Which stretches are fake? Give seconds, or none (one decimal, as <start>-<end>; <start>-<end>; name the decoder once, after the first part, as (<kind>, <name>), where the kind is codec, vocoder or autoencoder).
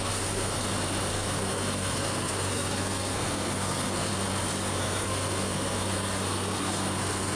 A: 0.0-0.6 (codec, SNAC); 1.1-4.1; 4.8-7.4